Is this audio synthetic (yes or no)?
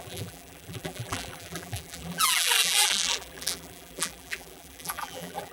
yes